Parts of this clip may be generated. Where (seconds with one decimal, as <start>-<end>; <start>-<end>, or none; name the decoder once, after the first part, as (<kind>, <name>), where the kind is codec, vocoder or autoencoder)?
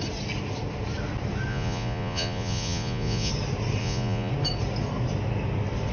1.5-3.3 (vocoder, Vocos); 3.8-4.3